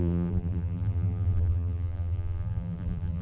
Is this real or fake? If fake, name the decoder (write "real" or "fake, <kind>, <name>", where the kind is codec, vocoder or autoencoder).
fake, vocoder, BigVGAN v2